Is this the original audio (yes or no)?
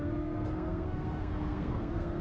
no